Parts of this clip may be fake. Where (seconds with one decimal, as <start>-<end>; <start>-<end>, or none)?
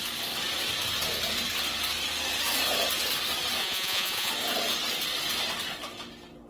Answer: 3.6-4.3